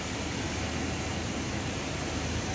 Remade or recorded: recorded